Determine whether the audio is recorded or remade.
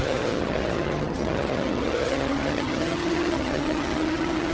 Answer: remade